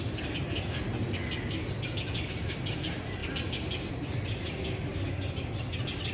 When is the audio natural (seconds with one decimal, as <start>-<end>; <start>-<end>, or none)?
0.0-6.1